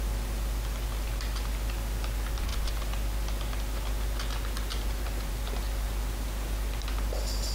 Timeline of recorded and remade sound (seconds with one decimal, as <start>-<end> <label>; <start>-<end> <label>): 0.0-7.5 recorded

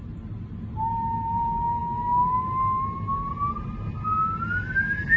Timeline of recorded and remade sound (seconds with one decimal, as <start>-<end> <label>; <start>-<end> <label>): 0.0-5.2 recorded

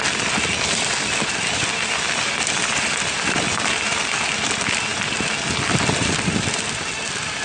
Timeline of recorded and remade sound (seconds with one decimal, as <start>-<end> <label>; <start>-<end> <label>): 0.0-7.4 recorded

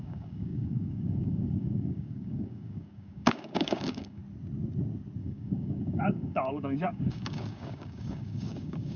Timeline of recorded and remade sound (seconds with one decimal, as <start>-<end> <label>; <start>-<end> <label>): 0.0-4.2 remade; 4.2-5.2 recorded; 5.2-9.0 remade

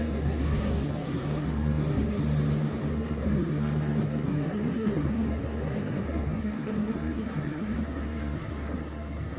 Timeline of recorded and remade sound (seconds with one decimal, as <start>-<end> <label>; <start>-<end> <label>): 0.0-2.2 remade; 2.2-2.9 recorded; 2.9-9.4 remade

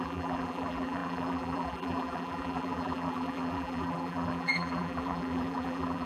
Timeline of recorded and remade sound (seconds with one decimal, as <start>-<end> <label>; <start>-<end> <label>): 0.0-6.1 remade